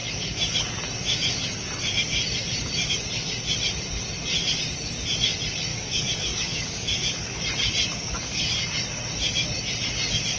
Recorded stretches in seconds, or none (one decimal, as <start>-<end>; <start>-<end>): 0.0-5.7; 7.4-7.9; 8.5-10.4